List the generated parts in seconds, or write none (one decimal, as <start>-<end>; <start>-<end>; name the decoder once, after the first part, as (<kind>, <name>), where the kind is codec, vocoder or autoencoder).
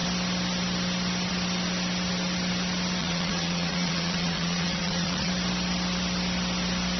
3.0-5.3 (vocoder, Vocos)